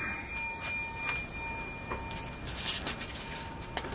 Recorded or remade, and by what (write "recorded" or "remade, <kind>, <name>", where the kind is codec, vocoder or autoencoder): recorded